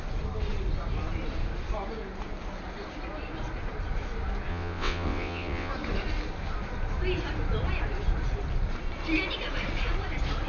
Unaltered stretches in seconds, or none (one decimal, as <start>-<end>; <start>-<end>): 0.0-4.5; 5.7-10.5